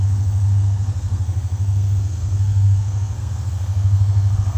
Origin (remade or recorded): remade